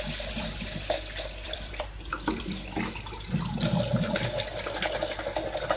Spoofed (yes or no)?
yes